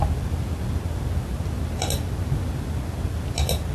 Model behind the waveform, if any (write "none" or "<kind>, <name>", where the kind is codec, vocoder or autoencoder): none